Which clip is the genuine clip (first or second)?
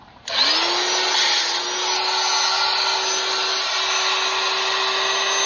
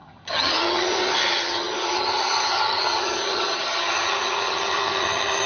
first